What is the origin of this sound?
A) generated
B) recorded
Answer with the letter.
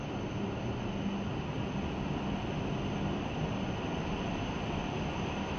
B